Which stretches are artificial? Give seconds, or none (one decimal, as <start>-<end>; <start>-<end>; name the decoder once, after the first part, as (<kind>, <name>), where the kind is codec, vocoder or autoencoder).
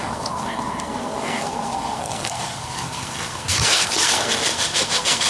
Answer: 0.0-5.3 (codec, SNAC)